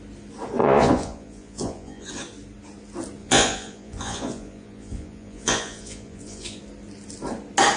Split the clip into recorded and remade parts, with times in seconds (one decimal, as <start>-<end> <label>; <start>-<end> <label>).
0.0-0.6 recorded; 0.6-2.1 remade; 2.1-3.2 recorded; 3.2-6.6 remade; 6.6-7.8 recorded